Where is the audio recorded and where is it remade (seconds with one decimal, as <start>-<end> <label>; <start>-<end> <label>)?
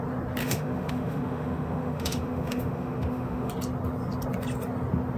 0.0-0.4 recorded; 0.4-3.5 remade; 3.5-5.2 recorded